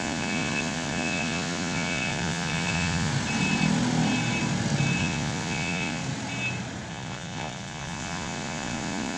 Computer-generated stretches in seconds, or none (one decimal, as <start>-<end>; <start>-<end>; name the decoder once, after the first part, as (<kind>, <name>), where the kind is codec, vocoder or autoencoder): 0.0-3.1 (vocoder, Vocos); 5.0-6.0; 6.9-9.2